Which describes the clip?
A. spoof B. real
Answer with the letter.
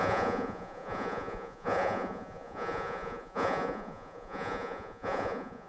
A